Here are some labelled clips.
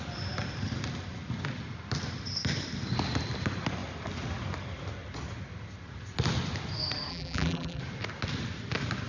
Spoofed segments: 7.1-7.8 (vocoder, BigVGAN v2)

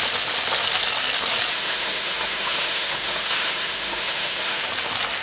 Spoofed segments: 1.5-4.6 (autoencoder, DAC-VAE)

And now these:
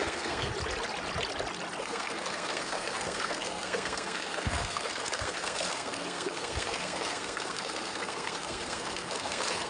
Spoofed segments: 0.0-0.5 (codec, SNAC); 1.8-9.7